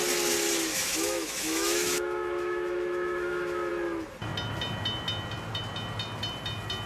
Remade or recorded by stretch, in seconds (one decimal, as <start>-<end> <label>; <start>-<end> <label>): 0.0-0.7 recorded; 0.7-3.7 remade; 3.7-6.9 recorded